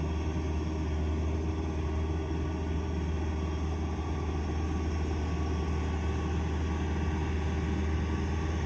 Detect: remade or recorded recorded